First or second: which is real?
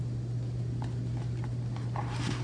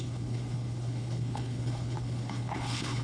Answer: first